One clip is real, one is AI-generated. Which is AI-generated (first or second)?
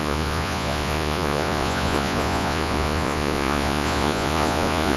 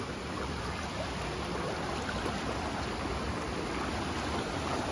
first